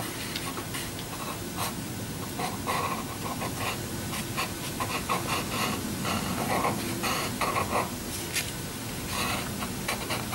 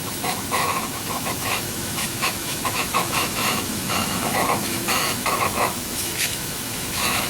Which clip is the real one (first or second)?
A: first